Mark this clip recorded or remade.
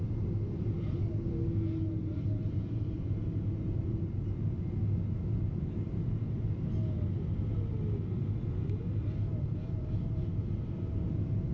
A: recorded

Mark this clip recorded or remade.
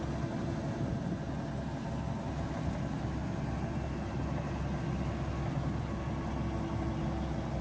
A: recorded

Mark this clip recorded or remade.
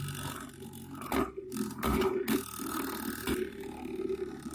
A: recorded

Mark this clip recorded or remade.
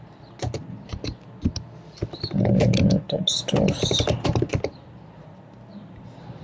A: recorded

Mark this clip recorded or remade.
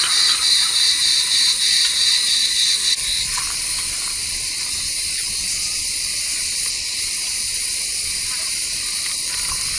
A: remade